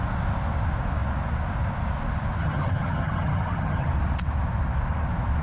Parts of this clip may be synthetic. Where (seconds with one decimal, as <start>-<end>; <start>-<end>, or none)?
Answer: 2.4-3.9